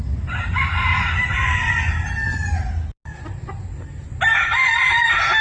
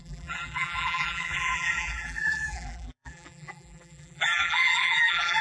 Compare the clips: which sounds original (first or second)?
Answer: first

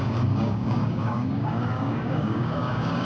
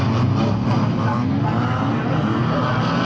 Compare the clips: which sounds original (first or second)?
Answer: second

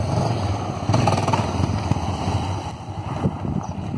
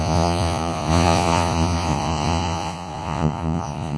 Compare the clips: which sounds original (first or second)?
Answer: first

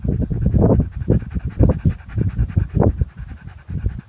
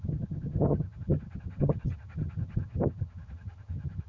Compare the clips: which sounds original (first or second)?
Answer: first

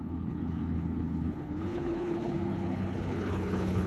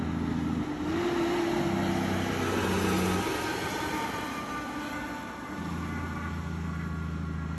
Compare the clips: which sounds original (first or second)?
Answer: second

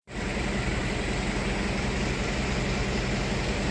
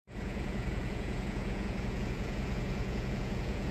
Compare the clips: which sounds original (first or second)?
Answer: first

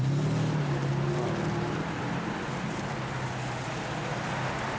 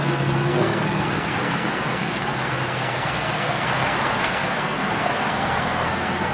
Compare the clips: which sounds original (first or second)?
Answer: first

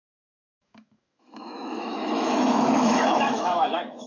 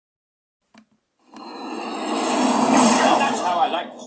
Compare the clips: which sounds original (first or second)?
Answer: second